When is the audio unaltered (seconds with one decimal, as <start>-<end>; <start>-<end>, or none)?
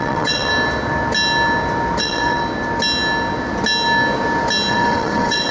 0.5-2.0; 2.4-4.7